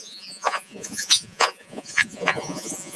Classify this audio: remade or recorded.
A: remade